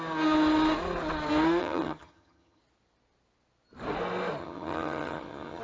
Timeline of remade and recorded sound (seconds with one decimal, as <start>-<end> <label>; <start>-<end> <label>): 0.0-1.6 recorded; 1.6-2.6 remade; 2.6-4.4 recorded; 4.4-5.6 remade